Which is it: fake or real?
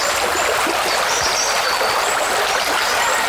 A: real